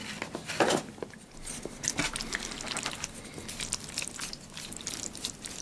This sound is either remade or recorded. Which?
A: recorded